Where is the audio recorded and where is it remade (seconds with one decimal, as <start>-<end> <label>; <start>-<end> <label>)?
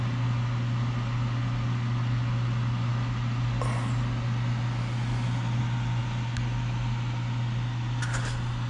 0.0-8.7 recorded